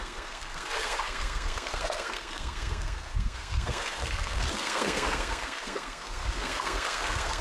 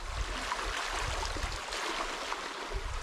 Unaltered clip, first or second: second